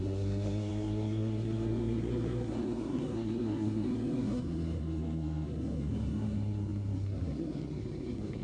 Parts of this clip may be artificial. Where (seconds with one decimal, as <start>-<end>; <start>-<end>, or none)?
0.0-8.4